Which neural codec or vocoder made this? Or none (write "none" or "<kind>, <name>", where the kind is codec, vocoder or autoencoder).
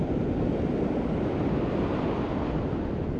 none